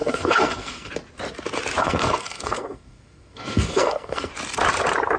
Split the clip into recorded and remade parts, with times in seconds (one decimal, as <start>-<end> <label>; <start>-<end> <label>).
0.0-0.9 remade; 0.9-1.8 recorded; 1.8-4.3 remade; 4.3-5.2 recorded